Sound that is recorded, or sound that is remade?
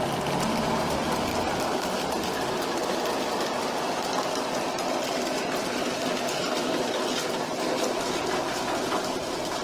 recorded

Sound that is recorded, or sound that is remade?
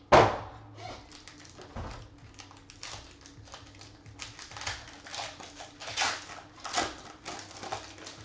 recorded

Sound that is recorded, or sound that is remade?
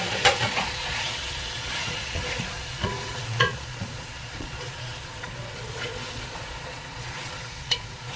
remade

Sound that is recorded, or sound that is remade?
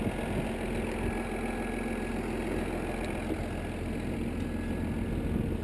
recorded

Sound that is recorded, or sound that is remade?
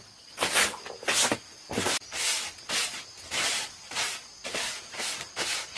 recorded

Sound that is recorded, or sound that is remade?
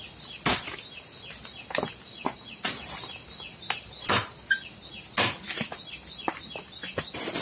recorded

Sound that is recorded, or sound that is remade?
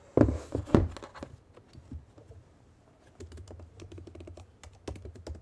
recorded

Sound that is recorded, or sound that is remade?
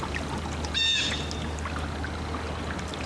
recorded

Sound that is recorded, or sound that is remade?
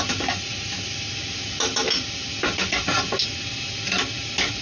recorded